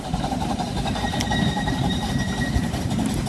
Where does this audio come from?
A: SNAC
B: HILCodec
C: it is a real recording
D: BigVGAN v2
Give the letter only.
D